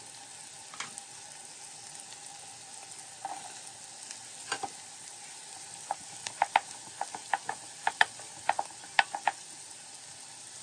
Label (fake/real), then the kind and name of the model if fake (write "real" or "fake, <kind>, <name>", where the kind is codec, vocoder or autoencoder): real